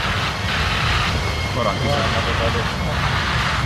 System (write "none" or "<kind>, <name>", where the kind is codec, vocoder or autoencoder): none